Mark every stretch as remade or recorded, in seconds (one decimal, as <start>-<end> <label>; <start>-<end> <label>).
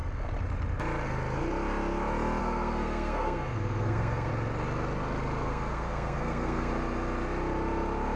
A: 0.0-2.4 recorded; 2.4-4.3 remade; 4.3-5.4 recorded; 5.4-6.7 remade; 6.7-8.2 recorded